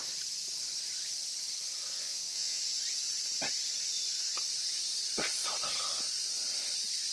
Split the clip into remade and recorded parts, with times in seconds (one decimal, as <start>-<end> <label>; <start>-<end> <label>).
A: 0.0-2.0 recorded; 2.0-2.6 remade; 2.6-7.1 recorded